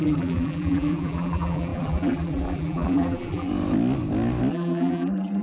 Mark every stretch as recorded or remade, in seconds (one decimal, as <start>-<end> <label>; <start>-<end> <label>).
0.0-3.5 remade; 3.5-4.5 recorded; 4.5-5.4 remade